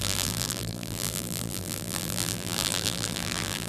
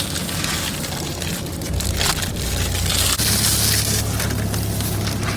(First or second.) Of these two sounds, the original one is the second